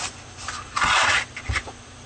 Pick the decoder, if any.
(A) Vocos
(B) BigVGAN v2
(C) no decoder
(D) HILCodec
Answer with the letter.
C